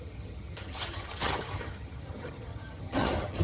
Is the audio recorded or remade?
remade